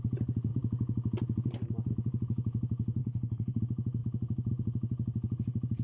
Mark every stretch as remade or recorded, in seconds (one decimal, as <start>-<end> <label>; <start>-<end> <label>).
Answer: 0.0-3.0 recorded; 3.0-3.6 remade; 3.6-5.8 recorded